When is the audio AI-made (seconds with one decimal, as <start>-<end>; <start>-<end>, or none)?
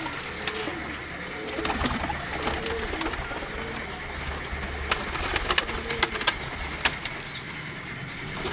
none